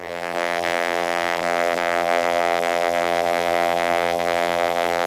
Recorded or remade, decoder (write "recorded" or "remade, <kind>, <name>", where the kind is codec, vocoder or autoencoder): remade, vocoder, BigVGAN v2